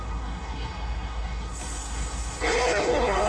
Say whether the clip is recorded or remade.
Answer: remade